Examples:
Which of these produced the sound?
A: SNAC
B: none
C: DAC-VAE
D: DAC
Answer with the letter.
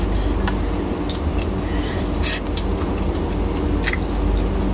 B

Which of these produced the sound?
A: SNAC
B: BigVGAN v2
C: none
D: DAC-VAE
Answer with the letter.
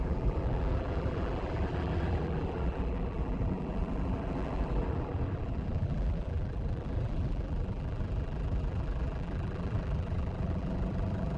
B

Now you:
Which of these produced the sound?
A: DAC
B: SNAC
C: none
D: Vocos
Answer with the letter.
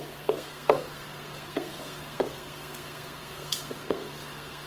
B